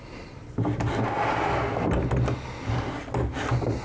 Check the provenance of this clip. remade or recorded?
recorded